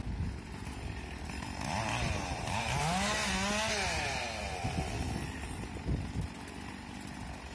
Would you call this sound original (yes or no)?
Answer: yes